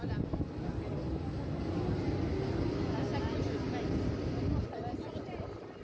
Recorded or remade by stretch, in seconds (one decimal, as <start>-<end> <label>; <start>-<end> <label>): 0.0-5.8 recorded